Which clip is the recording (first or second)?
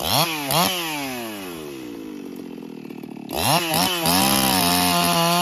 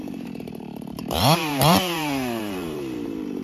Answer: first